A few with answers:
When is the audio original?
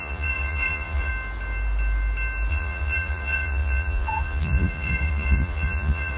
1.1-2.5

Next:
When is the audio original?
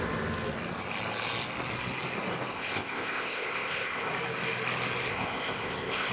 0.0-2.5; 4.1-5.1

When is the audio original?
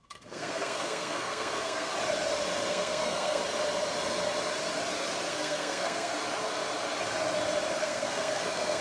1.9-2.7; 3.4-5.3; 6.1-7.8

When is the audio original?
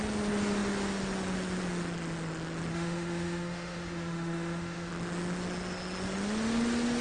0.0-2.7; 4.9-7.0